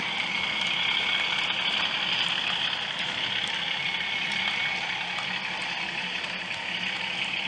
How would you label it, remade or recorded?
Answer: recorded